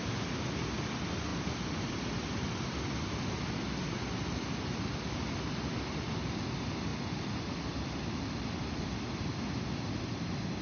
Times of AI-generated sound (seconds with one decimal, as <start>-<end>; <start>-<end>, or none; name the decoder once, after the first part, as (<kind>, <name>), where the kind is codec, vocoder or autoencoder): none